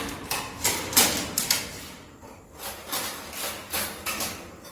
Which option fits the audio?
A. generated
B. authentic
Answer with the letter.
B